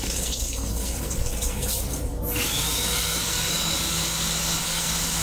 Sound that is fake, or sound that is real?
fake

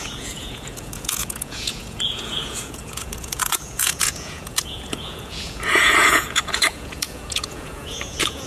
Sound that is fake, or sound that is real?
fake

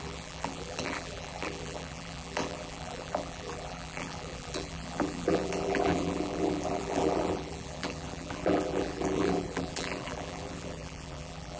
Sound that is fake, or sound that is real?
fake